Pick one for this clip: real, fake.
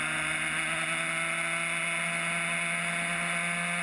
real